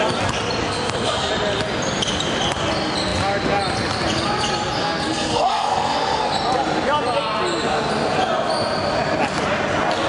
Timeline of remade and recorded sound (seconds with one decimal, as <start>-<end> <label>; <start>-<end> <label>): 0.0-0.6 recorded; 0.6-1.3 remade; 1.3-4.8 recorded; 4.8-6.3 remade; 6.3-10.1 recorded